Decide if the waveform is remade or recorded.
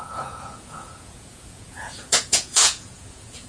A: remade